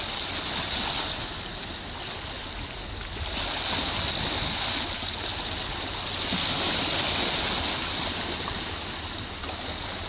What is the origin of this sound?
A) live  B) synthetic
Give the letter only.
A